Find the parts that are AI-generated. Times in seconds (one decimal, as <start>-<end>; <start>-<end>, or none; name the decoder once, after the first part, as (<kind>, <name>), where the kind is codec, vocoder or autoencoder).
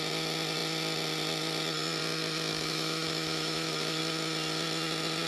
2.5-4.0 (autoencoder, DAC-VAE)